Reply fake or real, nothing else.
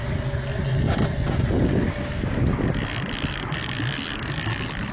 real